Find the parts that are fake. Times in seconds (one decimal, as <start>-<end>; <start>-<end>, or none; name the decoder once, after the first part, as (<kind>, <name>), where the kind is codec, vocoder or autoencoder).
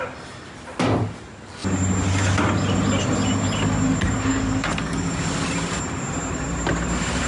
4.3-5.1 (codec, DAC)